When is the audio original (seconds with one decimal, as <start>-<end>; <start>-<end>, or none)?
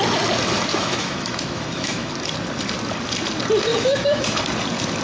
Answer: 0.0-0.7; 2.1-3.7; 4.4-5.0